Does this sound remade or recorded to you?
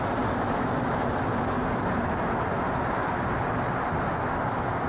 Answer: recorded